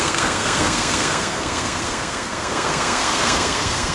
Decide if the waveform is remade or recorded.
remade